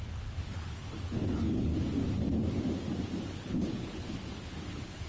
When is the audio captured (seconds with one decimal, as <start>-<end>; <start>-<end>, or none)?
1.7-3.3